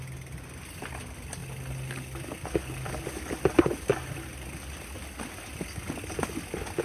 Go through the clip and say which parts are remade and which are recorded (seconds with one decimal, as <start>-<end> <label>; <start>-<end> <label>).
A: 0.0-6.8 recorded